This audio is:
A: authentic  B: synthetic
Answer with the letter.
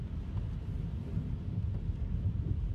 A